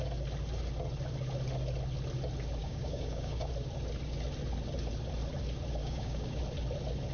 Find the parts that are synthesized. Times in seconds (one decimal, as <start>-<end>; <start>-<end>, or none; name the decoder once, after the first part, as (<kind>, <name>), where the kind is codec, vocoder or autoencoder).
2.6-3.5 (codec, DAC); 5.8-6.4